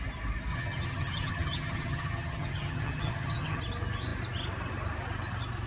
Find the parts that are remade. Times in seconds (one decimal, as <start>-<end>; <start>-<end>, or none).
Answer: 0.5-3.6